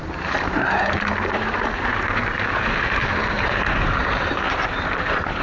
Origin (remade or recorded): remade